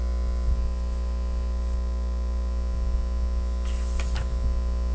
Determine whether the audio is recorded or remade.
recorded